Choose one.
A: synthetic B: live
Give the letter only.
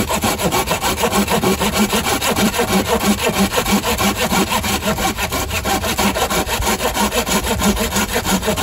A